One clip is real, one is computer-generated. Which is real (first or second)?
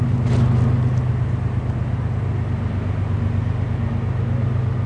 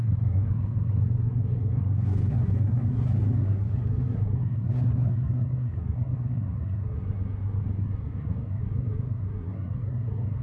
first